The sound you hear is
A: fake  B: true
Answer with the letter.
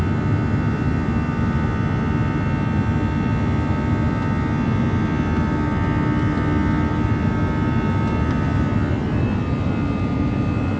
B